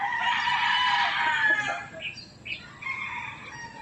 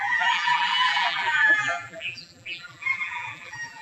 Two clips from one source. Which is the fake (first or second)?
second